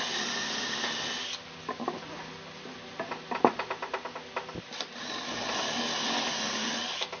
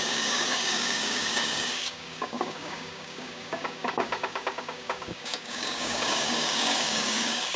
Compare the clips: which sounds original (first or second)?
first